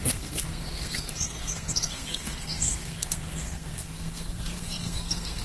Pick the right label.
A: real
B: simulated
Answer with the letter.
B